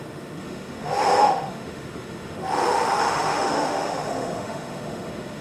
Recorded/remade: remade